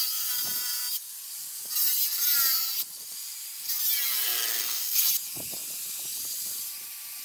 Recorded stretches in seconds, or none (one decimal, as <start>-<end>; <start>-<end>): 0.0-4.5; 5.0-7.2